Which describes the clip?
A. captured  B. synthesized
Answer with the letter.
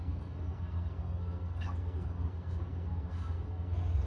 B